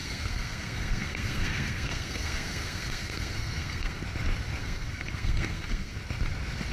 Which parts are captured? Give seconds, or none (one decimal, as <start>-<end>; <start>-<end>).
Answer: 4.0-4.6; 6.0-6.7